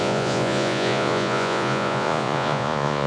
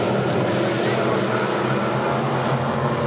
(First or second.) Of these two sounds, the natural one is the second